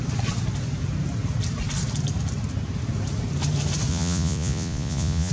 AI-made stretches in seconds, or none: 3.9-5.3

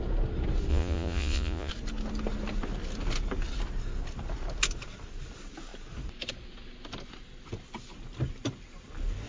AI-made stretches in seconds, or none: 0.7-1.7

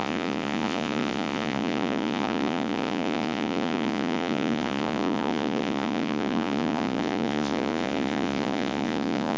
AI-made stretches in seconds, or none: 0.0-9.4

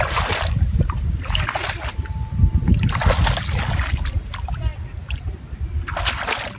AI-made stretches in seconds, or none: none

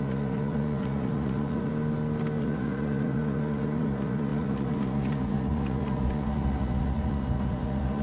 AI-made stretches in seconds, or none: 0.0-1.7; 2.4-8.0

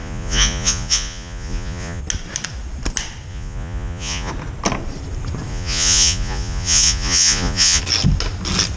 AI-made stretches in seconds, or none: 0.0-2.0; 3.3-4.3; 5.5-7.8

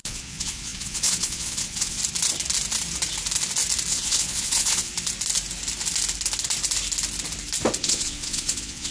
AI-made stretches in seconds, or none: 0.0-2.0; 3.9-4.9; 7.8-8.9

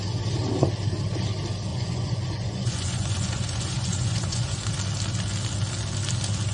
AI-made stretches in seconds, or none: 1.7-4.7